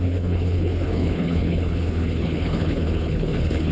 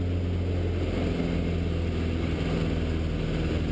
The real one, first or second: second